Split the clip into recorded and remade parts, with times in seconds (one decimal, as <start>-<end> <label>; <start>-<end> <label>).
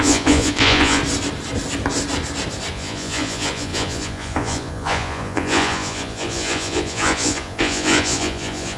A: 0.0-1.0 remade; 1.0-2.7 recorded; 2.7-8.8 remade